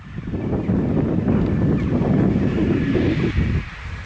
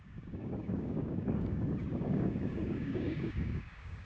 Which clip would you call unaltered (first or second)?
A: first